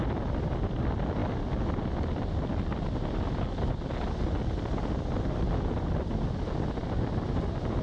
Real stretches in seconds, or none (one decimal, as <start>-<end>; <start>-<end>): 0.0-7.8